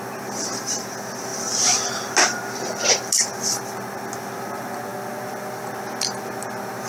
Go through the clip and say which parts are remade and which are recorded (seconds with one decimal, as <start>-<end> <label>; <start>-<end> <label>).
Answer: 0.0-6.9 recorded